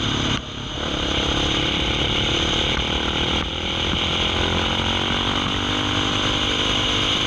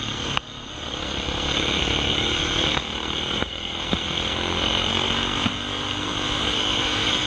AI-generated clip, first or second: second